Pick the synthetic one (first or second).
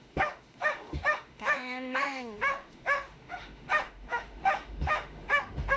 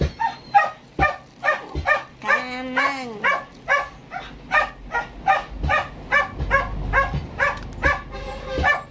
first